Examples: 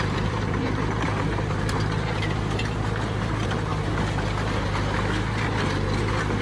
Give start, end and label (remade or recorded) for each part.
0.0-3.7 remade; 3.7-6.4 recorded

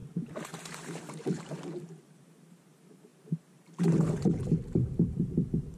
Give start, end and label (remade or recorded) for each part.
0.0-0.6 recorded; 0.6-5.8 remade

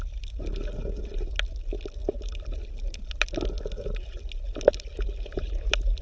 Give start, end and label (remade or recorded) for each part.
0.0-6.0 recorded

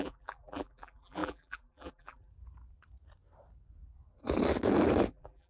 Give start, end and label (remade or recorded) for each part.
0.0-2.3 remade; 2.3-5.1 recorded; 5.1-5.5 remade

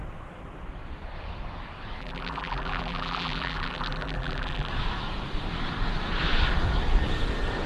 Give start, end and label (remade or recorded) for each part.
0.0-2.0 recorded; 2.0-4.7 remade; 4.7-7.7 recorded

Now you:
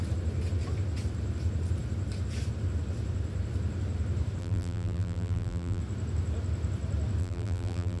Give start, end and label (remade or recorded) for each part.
0.0-4.4 recorded; 4.4-5.8 remade; 5.8-7.2 recorded; 7.2-8.0 remade

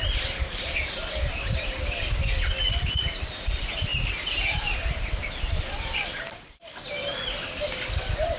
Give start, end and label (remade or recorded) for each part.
0.0-3.9 recorded; 3.9-8.4 remade

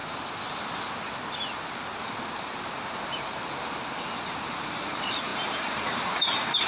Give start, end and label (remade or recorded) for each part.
0.0-4.0 recorded; 4.0-6.7 remade